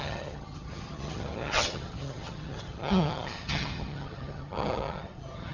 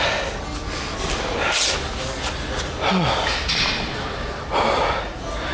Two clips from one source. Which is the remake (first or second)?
first